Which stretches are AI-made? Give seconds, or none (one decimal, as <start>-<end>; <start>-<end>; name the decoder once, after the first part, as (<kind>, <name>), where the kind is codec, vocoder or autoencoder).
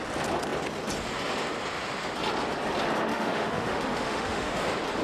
3.1-4.6 (autoencoder, DAC-VAE)